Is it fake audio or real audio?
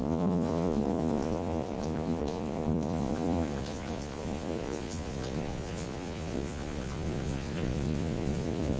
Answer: fake